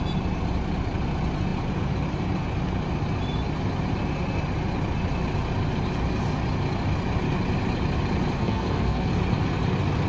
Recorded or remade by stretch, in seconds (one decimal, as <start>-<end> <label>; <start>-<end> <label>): 0.0-8.4 recorded; 8.4-9.1 remade; 9.1-10.1 recorded